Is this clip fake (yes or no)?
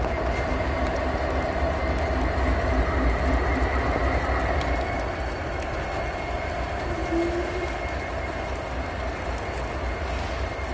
no